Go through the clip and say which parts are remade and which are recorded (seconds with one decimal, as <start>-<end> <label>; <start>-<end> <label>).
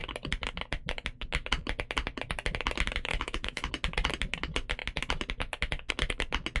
0.0-3.1 recorded; 3.1-3.7 remade; 3.7-6.6 recorded